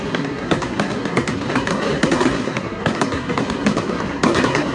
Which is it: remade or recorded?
remade